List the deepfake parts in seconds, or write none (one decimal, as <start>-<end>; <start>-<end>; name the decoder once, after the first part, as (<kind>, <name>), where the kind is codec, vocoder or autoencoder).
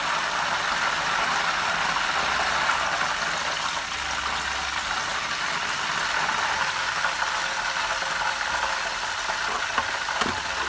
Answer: none